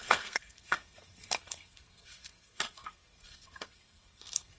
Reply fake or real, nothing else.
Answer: fake